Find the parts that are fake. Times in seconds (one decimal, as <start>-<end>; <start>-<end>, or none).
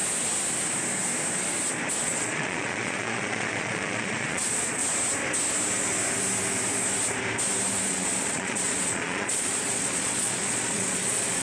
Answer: 2.0-4.8; 7.9-11.4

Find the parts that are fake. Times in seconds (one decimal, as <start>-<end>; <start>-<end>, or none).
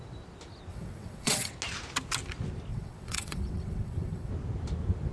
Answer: 0.7-1.5; 2.7-4.3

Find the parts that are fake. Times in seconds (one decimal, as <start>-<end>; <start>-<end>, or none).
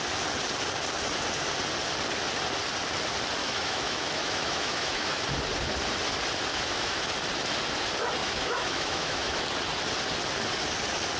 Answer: 3.4-5.2; 6.5-7.1; 8.2-9.4